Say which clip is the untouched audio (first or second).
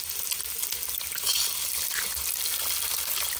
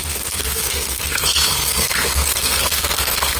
first